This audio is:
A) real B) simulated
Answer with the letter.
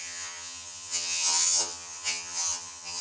B